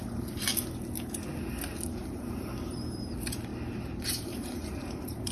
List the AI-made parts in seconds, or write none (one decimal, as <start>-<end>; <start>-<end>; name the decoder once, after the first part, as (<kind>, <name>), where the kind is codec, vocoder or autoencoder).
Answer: 0.0-0.5 (vocoder, BigVGAN v2); 1.8-3.5; 4.0-5.3